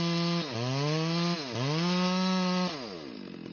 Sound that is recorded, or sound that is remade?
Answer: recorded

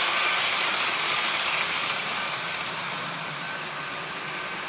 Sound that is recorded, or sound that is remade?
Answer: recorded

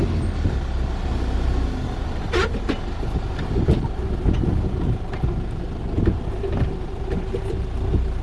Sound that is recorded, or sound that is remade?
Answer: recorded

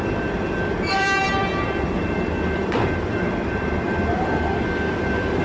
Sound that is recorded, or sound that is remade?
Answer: remade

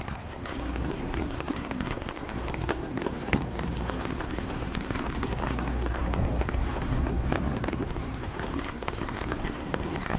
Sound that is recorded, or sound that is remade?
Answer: remade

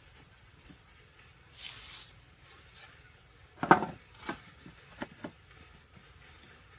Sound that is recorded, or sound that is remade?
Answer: recorded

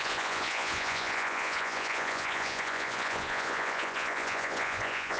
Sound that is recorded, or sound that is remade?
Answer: remade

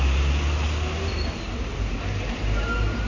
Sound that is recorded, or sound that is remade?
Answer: recorded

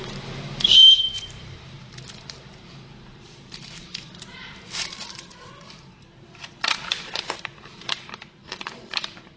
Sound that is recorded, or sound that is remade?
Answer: remade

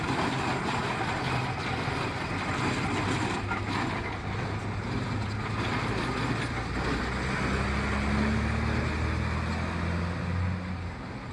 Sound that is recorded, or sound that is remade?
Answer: recorded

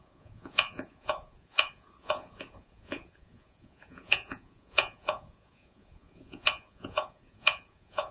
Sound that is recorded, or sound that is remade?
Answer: remade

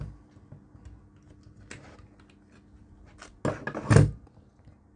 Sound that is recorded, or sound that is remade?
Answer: recorded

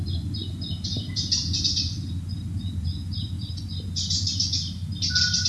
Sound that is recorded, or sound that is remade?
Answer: recorded